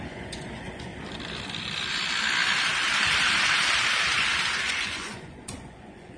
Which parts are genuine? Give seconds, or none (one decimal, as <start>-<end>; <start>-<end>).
0.9-4.6